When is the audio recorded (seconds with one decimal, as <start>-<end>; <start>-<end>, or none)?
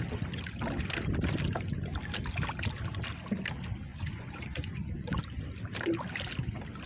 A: 0.0-3.9; 5.2-6.9